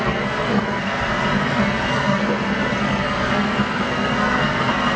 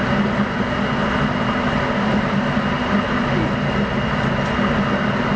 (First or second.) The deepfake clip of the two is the first